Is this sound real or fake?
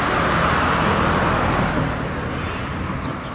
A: real